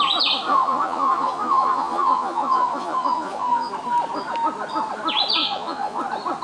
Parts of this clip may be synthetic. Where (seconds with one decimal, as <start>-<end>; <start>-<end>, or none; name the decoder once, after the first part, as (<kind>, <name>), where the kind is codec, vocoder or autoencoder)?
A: 0.5-3.7 (vocoder, Vocos); 5.4-6.0